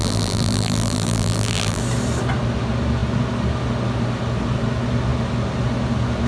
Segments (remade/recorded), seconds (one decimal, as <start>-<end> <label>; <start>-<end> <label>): 0.0-1.8 remade; 1.8-6.3 recorded